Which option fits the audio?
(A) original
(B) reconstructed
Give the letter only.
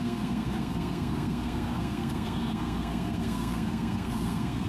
B